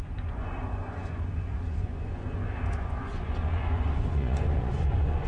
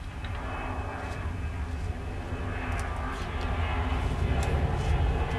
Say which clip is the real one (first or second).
second